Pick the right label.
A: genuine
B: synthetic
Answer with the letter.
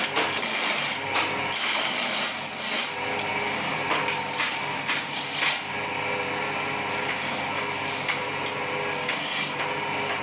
A